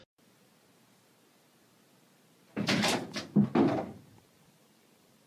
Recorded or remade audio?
recorded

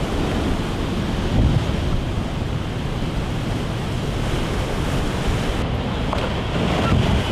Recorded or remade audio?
recorded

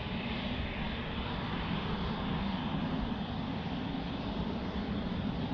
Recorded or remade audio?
remade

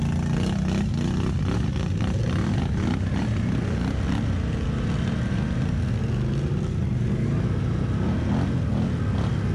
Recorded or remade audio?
recorded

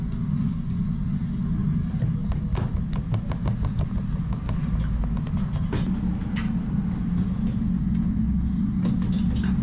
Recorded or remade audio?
recorded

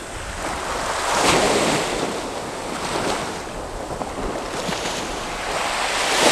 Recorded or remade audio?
recorded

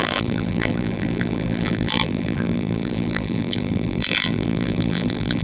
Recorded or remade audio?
remade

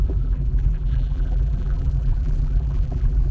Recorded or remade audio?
remade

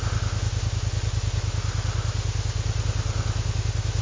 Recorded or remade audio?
recorded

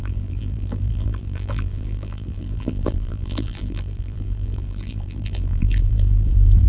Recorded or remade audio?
remade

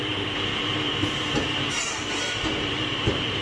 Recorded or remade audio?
remade